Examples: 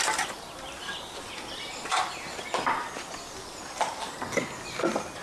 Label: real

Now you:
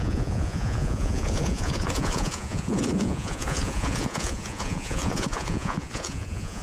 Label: fake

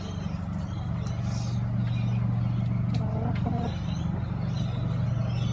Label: real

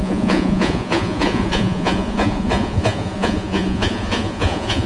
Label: fake